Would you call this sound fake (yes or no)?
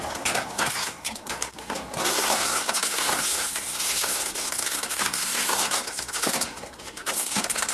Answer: yes